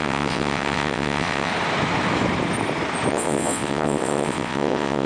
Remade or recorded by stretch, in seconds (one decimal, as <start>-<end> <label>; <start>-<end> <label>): 0.0-1.5 remade; 1.5-3.1 recorded; 3.1-5.1 remade